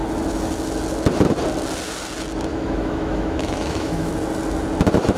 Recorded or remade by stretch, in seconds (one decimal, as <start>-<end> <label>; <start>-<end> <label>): 0.0-2.5 recorded; 2.5-4.1 remade; 4.1-5.2 recorded